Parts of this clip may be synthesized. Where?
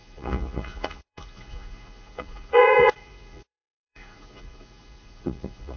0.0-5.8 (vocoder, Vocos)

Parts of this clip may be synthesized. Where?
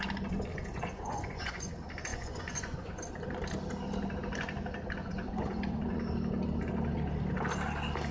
0.5-1.7 (vocoder, Vocos); 2.1-3.0; 5.0-6.0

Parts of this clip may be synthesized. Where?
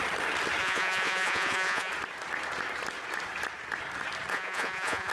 0.6-1.9 (vocoder, Vocos); 4.3-5.1